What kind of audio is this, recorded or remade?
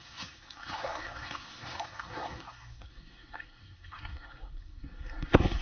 remade